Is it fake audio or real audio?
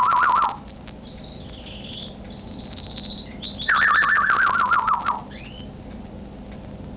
real